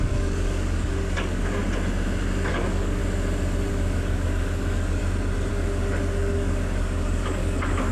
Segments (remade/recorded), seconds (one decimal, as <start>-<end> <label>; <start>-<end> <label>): 0.0-1.6 remade; 1.6-2.5 recorded; 2.5-3.0 remade; 3.0-3.7 recorded; 3.7-5.0 remade; 5.0-5.5 recorded; 5.5-7.9 remade